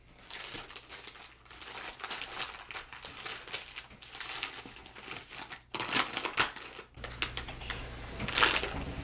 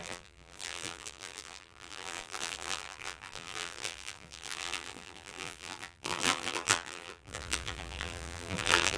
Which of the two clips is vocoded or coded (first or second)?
second